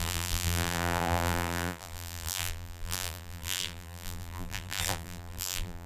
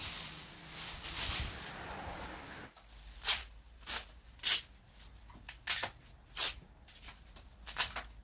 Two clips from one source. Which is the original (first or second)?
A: second